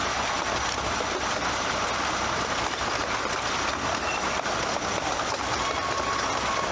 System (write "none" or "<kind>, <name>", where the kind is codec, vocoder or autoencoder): none